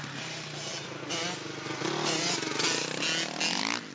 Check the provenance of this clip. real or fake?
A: real